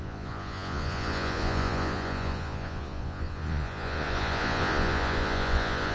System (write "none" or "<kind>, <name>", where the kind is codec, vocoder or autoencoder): vocoder, Vocos